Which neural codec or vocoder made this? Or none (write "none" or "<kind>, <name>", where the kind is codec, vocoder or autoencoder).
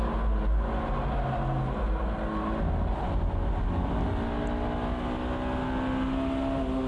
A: none